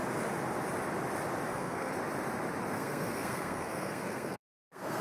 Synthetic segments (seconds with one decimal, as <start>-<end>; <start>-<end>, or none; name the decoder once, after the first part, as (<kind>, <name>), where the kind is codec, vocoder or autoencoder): 1.5-1.9 (codec, SNAC); 2.7-5.0